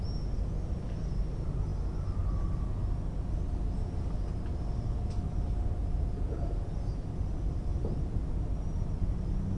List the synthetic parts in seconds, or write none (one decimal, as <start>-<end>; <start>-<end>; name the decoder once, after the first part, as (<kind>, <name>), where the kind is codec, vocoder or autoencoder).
5.8-6.7 (vocoder, Vocos); 7.7-8.2